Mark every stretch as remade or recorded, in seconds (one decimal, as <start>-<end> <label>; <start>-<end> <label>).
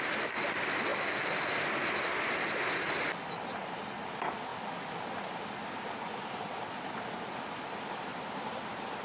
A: 0.0-9.0 recorded